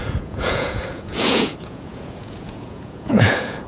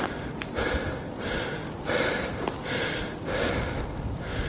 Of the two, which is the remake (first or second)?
first